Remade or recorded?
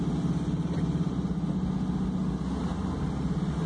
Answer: recorded